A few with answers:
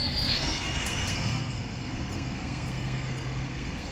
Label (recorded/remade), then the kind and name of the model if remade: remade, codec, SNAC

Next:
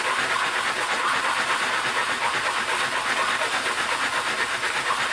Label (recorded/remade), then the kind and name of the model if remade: recorded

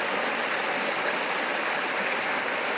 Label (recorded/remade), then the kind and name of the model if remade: recorded